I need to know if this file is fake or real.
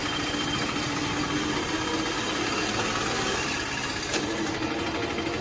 real